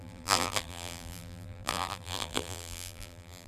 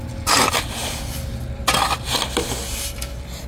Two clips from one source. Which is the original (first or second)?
second